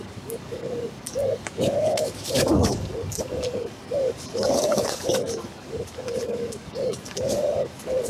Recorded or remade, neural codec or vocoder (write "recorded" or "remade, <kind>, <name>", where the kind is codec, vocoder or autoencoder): remade, codec, DAC